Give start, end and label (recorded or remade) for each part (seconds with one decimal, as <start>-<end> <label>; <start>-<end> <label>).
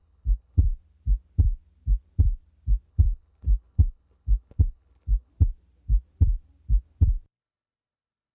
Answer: 0.0-0.7 remade; 0.7-2.9 recorded; 2.9-5.3 remade; 5.3-7.4 recorded; 7.4-8.3 remade